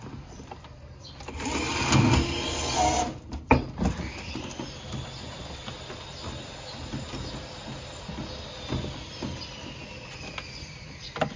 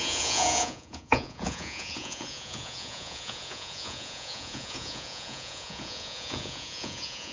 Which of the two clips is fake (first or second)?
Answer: second